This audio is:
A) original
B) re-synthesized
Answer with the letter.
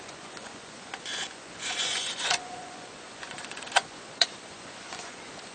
B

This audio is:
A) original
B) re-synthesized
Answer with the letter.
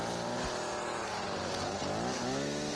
A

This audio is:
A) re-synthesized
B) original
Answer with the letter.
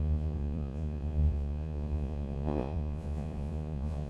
A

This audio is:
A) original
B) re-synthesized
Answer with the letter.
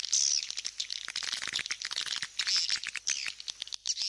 A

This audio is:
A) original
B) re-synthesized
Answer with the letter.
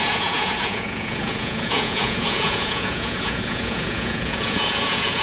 B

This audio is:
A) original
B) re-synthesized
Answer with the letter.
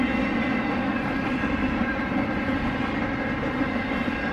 A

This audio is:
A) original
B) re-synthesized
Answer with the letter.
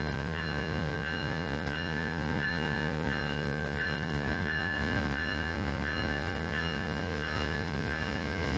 B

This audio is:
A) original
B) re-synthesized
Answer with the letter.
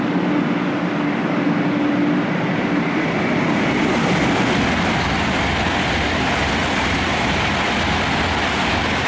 A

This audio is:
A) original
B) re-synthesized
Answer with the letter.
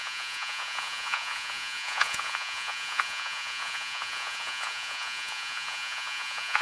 B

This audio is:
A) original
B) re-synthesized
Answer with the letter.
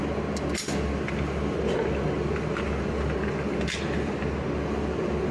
A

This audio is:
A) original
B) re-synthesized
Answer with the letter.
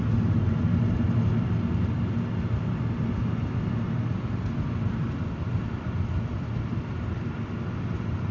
A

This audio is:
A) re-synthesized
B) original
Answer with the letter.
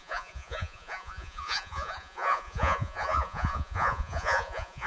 A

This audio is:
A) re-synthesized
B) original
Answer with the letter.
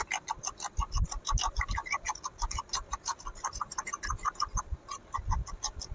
B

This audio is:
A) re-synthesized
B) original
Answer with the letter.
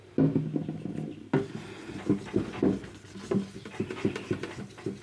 B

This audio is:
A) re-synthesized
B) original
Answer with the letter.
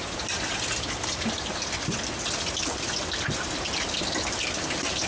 B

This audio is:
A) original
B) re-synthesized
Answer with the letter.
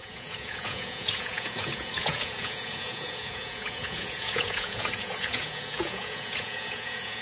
B